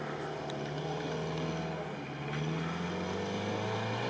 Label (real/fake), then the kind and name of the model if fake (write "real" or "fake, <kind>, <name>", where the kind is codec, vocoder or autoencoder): real